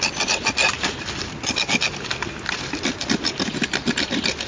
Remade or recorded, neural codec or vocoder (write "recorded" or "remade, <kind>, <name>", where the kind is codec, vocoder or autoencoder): recorded